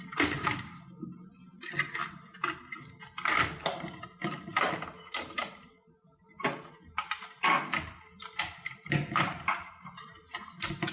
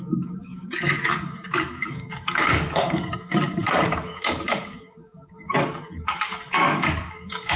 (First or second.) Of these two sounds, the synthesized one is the second